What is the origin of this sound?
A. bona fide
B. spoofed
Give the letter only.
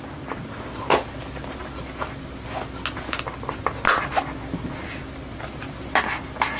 A